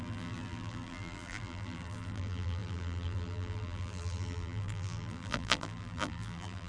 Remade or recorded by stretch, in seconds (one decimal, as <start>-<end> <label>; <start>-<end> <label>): 0.0-6.7 remade